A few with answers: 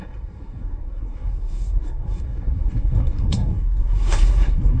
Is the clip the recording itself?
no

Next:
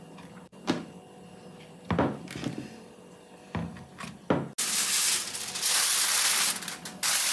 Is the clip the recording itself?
yes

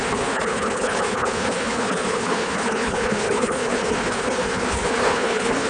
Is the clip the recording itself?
no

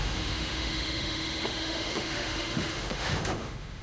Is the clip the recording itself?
no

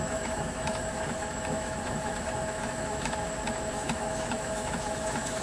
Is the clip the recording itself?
no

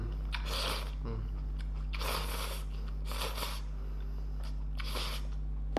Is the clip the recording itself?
yes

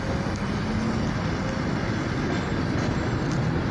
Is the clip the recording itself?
yes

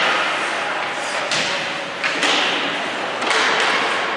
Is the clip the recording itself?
yes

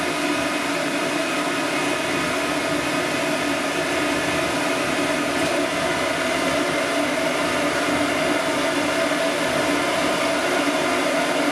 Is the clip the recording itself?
yes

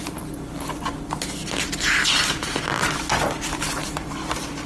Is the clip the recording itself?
yes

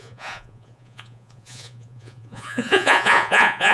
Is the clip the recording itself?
no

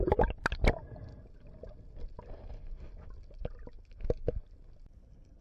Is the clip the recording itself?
yes